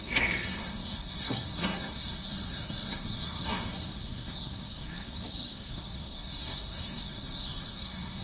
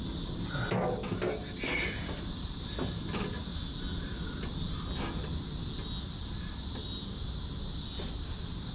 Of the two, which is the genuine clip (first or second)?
second